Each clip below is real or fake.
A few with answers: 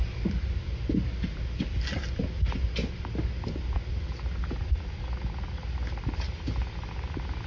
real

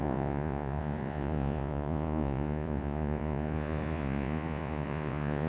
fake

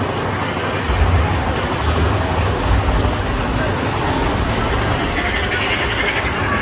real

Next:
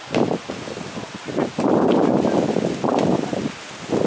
real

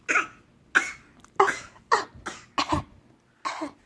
real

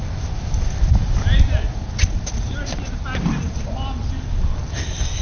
real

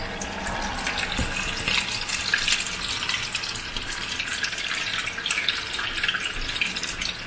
real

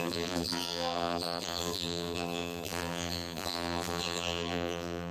fake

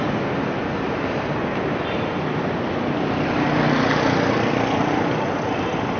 real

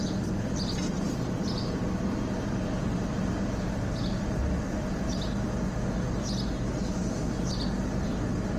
real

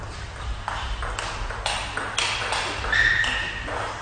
real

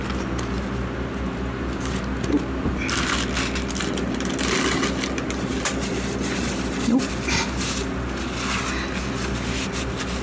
real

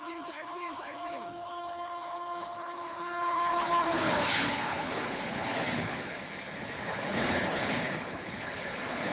fake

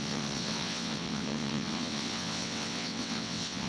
fake